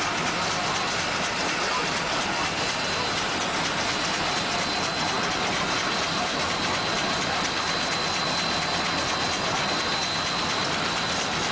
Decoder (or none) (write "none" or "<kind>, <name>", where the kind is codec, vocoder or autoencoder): none